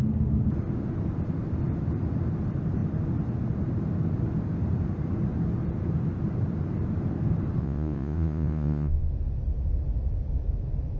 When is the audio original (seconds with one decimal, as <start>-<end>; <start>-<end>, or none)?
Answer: 0.0-7.6; 9.1-11.0